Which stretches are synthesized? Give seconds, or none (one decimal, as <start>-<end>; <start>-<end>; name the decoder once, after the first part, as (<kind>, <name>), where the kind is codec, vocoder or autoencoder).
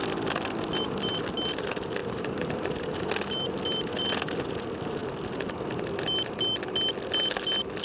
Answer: 2.0-3.1 (vocoder, BigVGAN v2)